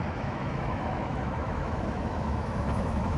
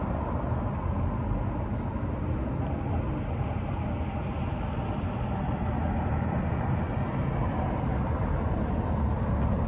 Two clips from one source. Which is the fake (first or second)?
first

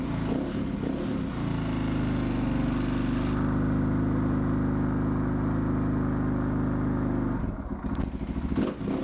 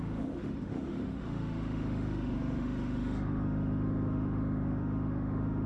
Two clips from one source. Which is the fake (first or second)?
second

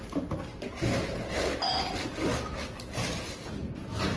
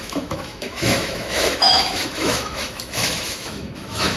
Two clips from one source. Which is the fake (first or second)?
second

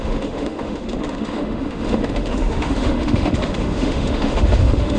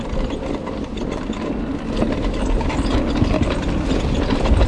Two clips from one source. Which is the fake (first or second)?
first